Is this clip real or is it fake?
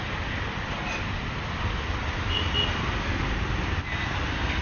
real